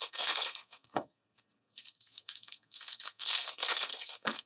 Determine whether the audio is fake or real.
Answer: fake